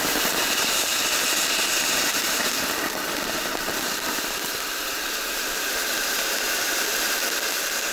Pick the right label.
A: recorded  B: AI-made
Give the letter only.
B